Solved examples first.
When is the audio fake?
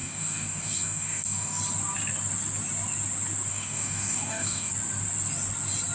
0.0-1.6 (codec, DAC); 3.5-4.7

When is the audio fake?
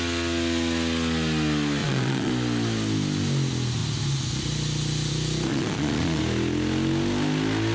1.8-2.3 (vocoder, Vocos); 5.5-6.2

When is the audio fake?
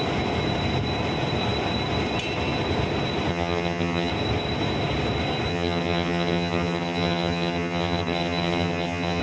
3.3-4.1 (vocoder, HiFi-GAN); 5.5-9.2